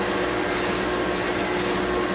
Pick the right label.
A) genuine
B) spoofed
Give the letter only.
A